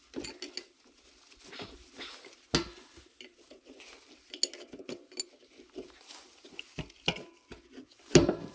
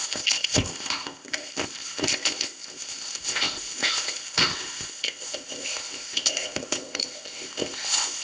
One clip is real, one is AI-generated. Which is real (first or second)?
first